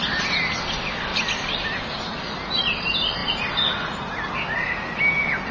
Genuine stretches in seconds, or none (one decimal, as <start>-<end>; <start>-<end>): 0.0-5.5